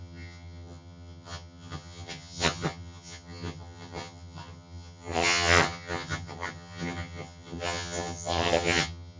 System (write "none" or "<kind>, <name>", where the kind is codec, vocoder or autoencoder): vocoder, HiFi-GAN